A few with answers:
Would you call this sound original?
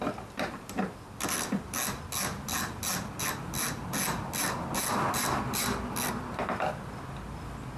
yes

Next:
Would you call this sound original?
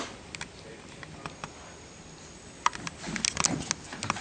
yes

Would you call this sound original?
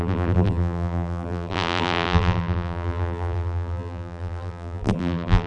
no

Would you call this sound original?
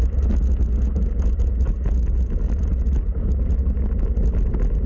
yes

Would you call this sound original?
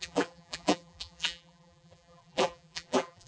no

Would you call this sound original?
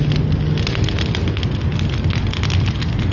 yes